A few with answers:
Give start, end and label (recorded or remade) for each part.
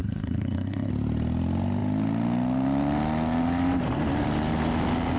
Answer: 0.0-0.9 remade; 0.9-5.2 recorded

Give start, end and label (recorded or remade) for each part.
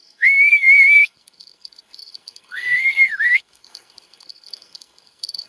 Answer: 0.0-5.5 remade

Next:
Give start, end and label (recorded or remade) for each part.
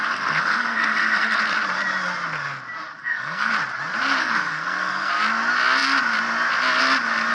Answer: 0.0-1.4 remade; 1.4-3.0 recorded; 3.0-3.5 remade; 3.5-4.2 recorded; 4.2-5.1 remade; 5.1-7.3 recorded